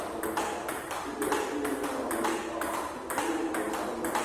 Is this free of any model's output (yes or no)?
yes